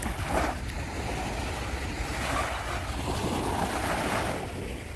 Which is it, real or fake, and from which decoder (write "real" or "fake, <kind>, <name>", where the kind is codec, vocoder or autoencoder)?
real